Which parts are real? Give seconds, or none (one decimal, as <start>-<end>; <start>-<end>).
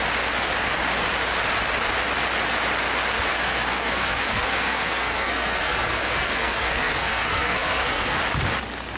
0.0-3.3; 8.2-9.0